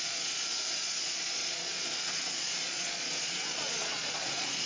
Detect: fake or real fake